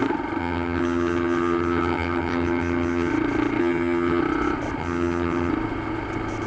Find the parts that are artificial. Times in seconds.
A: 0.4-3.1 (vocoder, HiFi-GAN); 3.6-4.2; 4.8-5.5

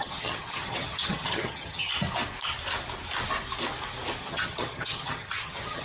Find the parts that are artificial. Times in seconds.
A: 0.0-1.9 (vocoder, HiFi-GAN); 4.2-5.8

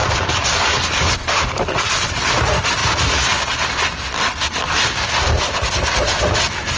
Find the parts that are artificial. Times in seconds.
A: none

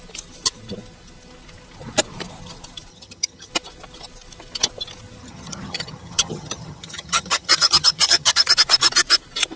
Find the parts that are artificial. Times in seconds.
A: 2.9-3.5 (vocoder, HiFi-GAN); 5.2-8.5

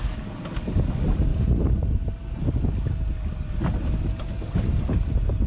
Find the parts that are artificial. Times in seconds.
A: none

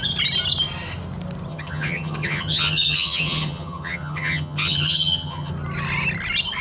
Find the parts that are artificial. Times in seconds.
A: 1.5-5.5 (vocoder, HiFi-GAN)

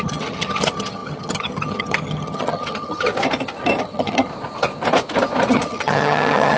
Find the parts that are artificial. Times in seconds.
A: 0.0-3.1 (vocoder, HiFi-GAN); 3.8-4.3; 5.5-6.6